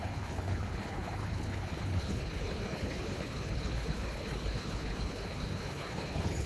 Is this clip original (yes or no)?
no